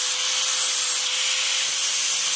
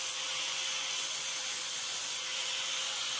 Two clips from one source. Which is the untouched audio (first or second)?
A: first